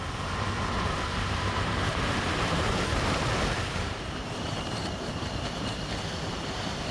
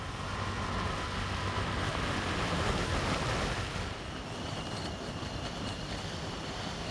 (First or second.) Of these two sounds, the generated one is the first